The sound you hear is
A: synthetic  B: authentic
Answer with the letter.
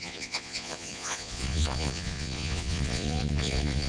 A